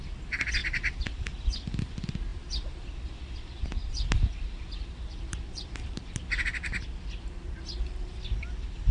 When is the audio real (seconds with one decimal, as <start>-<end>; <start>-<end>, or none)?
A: 0.0-0.6; 1.2-2.3; 6.0-8.9